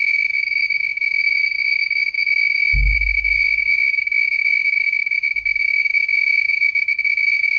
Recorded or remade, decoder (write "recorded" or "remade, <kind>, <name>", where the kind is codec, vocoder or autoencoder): recorded